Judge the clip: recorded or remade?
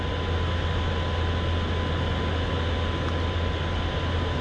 recorded